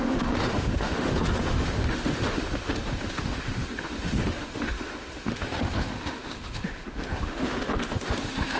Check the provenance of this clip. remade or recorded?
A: remade